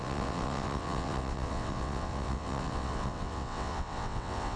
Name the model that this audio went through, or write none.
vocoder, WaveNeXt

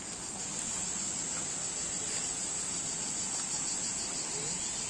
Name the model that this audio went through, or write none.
none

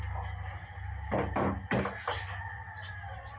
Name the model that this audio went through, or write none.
none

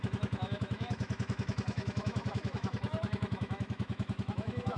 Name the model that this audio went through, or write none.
autoencoder, DAC-VAE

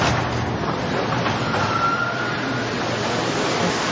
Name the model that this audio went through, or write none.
none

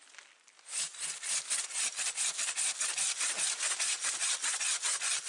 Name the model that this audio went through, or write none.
none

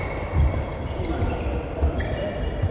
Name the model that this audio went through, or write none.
vocoder, BigVGAN v2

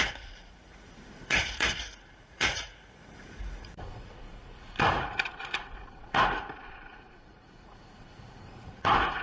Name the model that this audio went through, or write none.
vocoder, Vocos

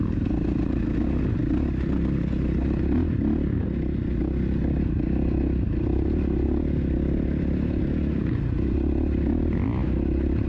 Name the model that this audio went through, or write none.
none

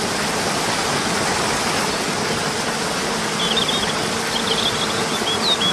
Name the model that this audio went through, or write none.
none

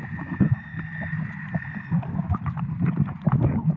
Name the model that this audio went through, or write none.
none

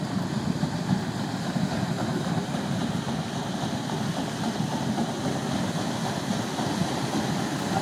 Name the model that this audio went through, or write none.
none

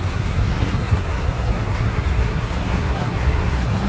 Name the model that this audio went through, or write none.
codec, SNAC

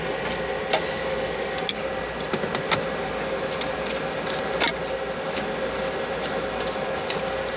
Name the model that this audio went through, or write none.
none